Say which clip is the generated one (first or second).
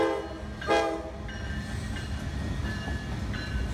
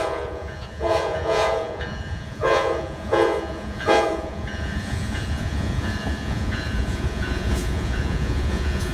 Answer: second